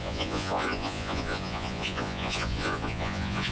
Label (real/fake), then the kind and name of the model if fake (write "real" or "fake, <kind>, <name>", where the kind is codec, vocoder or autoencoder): fake, vocoder, Vocos